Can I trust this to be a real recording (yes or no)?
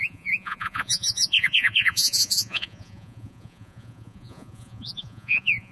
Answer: no